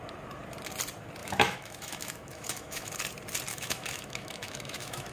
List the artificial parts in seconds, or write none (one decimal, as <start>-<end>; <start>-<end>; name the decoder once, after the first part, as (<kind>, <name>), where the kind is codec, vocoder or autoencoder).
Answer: 1.2-2.9 (autoencoder, DAC-VAE); 3.5-5.1